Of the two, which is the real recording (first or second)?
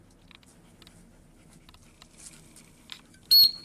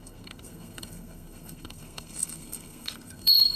first